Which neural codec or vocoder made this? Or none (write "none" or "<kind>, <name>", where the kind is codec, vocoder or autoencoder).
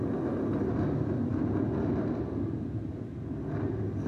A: none